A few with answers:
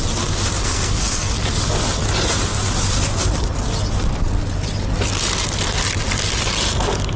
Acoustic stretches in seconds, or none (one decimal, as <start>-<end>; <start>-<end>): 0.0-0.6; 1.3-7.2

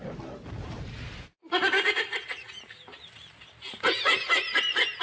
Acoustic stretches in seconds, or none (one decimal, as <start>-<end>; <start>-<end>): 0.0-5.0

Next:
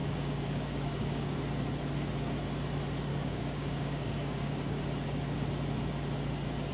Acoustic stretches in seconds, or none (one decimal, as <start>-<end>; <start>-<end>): 1.4-3.1; 4.8-6.7

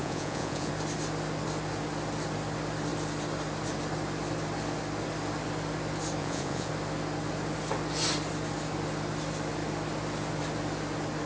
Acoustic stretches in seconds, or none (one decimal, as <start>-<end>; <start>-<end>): 0.7-6.2; 6.7-11.3

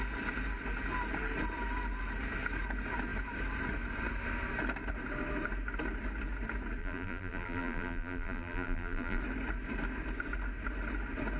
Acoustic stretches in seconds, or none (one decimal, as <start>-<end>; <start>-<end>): 0.0-6.8; 9.2-11.4